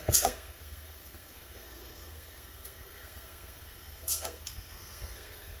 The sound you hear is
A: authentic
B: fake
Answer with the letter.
B